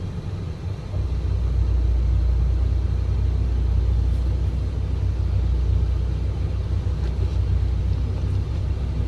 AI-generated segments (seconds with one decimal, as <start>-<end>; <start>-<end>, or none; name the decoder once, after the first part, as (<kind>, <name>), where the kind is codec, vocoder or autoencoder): none